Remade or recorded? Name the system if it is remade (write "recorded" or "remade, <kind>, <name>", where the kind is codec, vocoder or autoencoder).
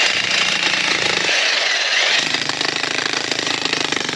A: remade, vocoder, Vocos